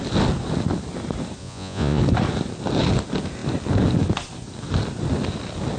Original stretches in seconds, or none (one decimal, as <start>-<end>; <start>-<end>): 0.0-1.4; 2.0-5.8